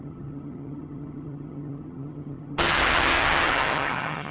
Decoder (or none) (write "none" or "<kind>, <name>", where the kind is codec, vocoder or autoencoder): vocoder, HiFi-GAN